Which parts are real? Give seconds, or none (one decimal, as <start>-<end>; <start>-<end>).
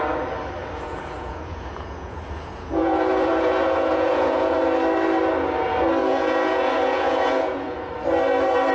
0.0-0.6; 4.6-6.0; 7.9-8.7